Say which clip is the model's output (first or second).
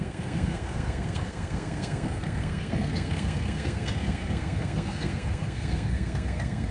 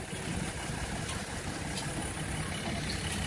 first